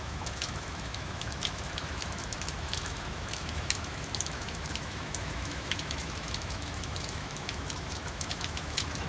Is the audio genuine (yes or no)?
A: no